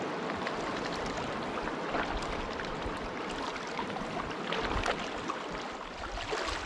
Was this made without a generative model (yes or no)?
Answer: yes